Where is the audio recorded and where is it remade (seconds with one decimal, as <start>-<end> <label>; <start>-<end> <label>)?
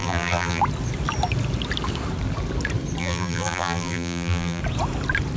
0.0-0.6 remade; 0.6-3.0 recorded; 3.0-4.6 remade; 4.6-5.4 recorded